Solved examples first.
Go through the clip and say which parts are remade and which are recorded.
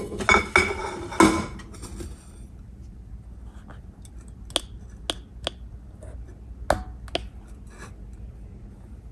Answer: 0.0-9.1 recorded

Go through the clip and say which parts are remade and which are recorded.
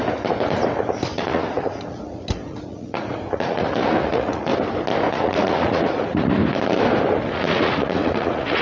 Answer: 0.0-1.1 recorded; 1.1-4.5 remade; 4.5-5.1 recorded; 5.1-6.4 remade; 6.4-7.3 recorded; 7.3-8.6 remade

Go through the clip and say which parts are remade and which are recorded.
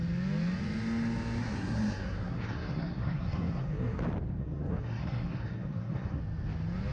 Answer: 0.0-1.4 recorded; 1.4-4.0 remade; 4.0-4.4 recorded; 4.4-6.2 remade; 6.2-6.9 recorded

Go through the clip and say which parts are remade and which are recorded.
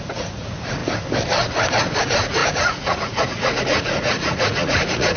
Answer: 0.0-0.8 remade; 0.8-2.0 recorded; 2.0-5.2 remade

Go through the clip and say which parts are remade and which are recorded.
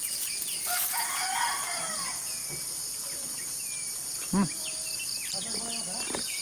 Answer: 0.0-2.4 remade; 2.4-6.4 recorded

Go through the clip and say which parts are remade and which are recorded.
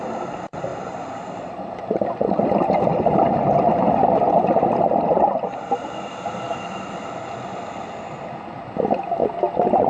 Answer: 0.0-0.7 recorded; 0.7-2.2 remade; 2.2-2.9 recorded; 2.9-4.7 remade; 4.7-9.9 recorded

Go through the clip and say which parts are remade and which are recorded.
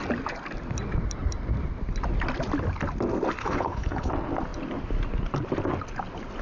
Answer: 0.0-3.4 recorded; 3.4-4.1 remade; 4.1-6.4 recorded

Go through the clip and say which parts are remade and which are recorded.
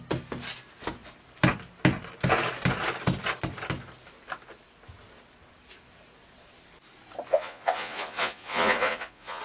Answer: 0.0-7.3 recorded; 7.3-9.4 remade